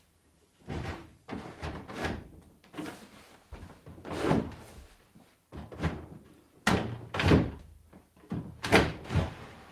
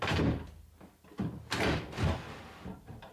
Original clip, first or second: second